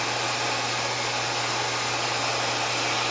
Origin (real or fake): real